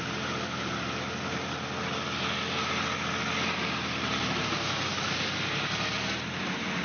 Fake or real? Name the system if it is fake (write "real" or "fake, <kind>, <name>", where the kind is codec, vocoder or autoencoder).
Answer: real